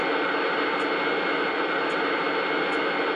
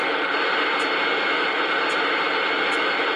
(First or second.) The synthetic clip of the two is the second